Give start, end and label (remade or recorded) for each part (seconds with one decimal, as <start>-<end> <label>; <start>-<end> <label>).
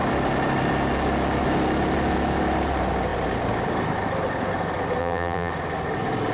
0.0-5.0 recorded; 5.0-5.5 remade; 5.5-6.3 recorded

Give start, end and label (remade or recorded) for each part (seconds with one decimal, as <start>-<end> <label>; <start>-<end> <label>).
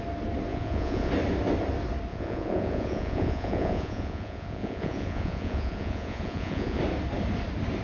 0.0-0.5 recorded; 0.5-1.1 remade; 1.1-2.1 recorded; 2.1-6.8 remade; 6.8-7.8 recorded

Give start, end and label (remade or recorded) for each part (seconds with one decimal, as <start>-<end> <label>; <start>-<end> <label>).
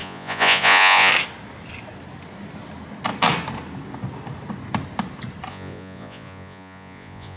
0.0-1.1 remade; 1.1-5.5 recorded; 5.5-7.4 remade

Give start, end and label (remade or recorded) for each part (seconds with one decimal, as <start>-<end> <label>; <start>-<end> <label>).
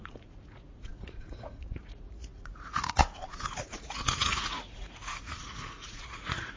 0.0-6.6 remade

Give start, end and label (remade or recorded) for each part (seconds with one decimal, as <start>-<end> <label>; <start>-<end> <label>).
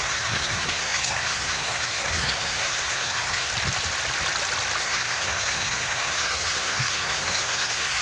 0.0-3.5 remade; 3.5-4.8 recorded; 4.8-8.0 remade